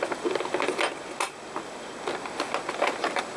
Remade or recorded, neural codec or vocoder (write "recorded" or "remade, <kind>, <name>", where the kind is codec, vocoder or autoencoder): recorded